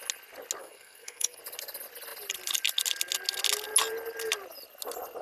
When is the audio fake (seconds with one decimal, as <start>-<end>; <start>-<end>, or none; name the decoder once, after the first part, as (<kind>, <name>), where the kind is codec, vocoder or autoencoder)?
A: 0.6-1.4 (codec, SNAC)